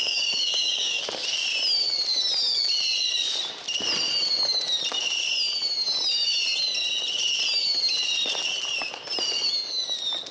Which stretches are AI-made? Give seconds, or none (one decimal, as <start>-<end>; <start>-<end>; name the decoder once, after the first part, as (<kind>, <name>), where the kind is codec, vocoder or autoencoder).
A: 0.0-1.0 (codec, DAC)